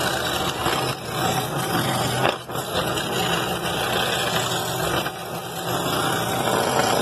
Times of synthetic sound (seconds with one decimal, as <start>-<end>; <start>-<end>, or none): none